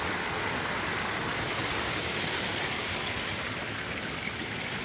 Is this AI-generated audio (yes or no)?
no